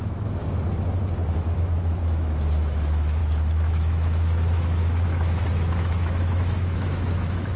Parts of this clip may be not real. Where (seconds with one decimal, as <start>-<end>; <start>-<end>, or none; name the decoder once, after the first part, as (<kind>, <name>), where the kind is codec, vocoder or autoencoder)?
0.0-0.4 (autoencoder, DAC-VAE); 1.3-7.6